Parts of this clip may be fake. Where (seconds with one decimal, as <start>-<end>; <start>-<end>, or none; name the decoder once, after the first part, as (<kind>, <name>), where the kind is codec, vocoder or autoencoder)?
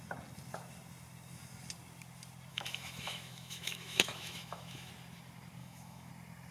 2.5-4.9 (autoencoder, DAC-VAE); 5.6-6.1